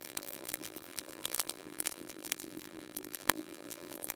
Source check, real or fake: fake